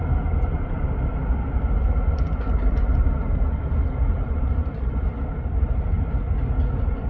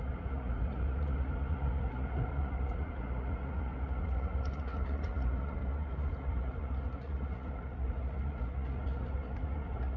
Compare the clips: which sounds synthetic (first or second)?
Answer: second